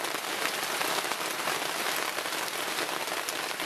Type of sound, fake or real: real